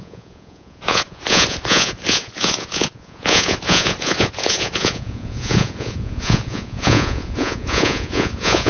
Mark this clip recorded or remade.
remade